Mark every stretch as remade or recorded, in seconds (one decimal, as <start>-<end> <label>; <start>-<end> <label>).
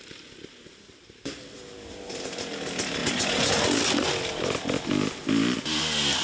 0.0-3.0 recorded; 3.0-3.5 remade; 3.5-6.2 recorded